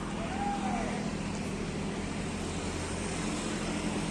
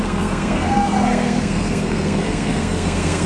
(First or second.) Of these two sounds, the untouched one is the first